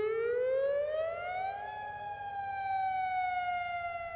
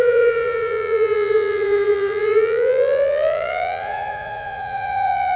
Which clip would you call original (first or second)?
first